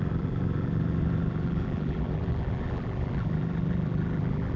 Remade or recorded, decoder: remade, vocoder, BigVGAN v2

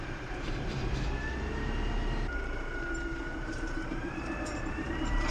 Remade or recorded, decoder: remade, vocoder, BigVGAN v2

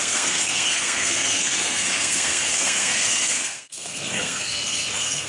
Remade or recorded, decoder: remade, codec, SNAC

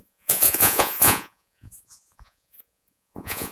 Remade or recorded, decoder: remade, vocoder, Vocos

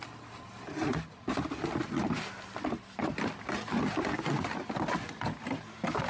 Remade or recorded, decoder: recorded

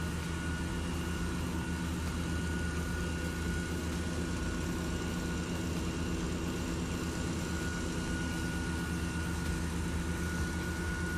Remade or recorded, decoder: recorded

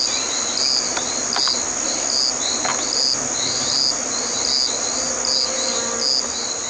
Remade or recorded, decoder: recorded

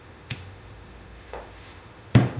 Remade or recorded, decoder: remade, autoencoder, DAC-VAE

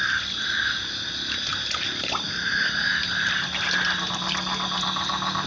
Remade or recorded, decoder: recorded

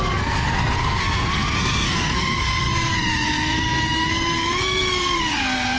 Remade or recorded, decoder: remade, codec, SNAC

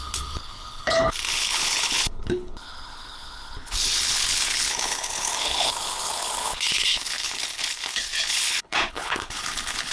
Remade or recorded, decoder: remade, codec, HILCodec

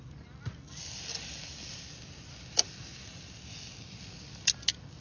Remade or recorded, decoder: recorded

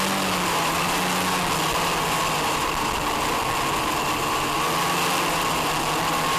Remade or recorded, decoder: recorded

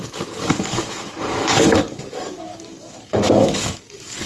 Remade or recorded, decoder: remade, codec, DAC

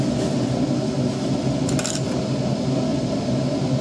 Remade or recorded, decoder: recorded